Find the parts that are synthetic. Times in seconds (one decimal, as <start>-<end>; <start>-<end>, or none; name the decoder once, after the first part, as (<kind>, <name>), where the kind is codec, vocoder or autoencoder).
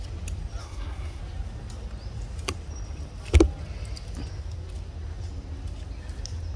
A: 0.6-1.2 (codec, SNAC)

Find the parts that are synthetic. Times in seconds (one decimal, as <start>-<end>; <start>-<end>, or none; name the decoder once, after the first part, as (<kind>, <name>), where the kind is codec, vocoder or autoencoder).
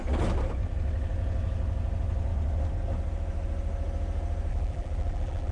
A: 4.5-5.5 (vocoder, BigVGAN v2)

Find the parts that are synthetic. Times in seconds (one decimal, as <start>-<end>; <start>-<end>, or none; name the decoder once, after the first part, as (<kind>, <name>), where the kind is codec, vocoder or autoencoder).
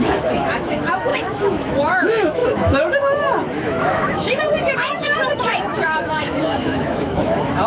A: 0.0-7.7 (autoencoder, DAC-VAE)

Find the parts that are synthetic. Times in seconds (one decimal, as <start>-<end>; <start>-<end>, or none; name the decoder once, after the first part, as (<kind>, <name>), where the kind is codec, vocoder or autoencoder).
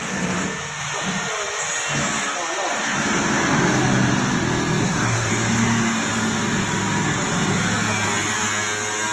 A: 4.8-5.3 (codec, SNAC)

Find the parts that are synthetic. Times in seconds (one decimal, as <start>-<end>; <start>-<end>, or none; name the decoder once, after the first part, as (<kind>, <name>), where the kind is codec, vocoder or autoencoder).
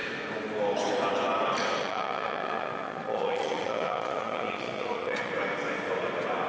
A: 1.8-5.3 (vocoder, Vocos)